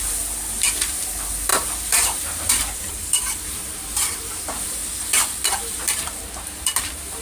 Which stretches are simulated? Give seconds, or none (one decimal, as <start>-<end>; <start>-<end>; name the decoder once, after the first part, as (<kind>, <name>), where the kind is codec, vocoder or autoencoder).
0.0-4.8 (vocoder, BigVGAN v2); 5.5-7.2